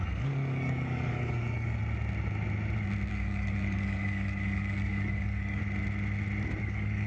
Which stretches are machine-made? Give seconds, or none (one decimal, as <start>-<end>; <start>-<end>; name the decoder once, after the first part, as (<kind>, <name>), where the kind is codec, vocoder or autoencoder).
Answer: 0.0-1.8 (codec, DAC); 3.1-5.6; 6.6-7.1